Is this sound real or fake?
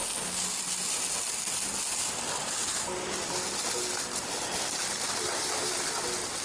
real